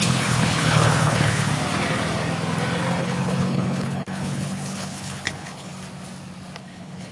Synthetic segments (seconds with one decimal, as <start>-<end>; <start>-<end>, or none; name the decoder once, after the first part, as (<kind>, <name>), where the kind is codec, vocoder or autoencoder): 0.0-1.5 (codec, HILCodec); 3.0-5.7; 6.6-7.1